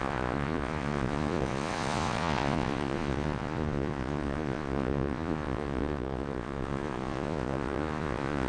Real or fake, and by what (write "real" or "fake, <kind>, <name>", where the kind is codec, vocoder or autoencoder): fake, vocoder, Vocos